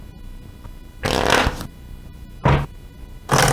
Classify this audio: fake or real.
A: real